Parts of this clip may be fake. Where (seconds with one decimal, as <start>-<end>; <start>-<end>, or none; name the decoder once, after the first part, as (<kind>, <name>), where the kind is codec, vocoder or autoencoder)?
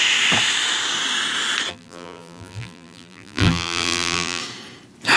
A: 1.7-4.4 (vocoder, BigVGAN v2)